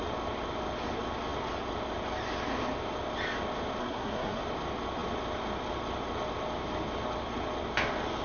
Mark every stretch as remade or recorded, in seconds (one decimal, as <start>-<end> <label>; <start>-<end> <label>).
0.0-3.8 recorded; 3.8-4.4 remade; 4.4-8.2 recorded